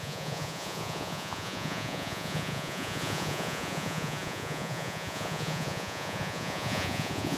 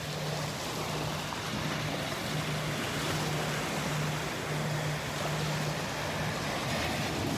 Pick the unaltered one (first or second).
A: second